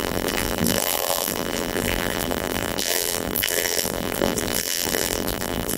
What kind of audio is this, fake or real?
fake